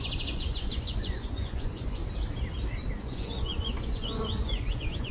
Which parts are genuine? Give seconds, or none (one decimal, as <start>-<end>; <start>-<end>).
2.0-3.0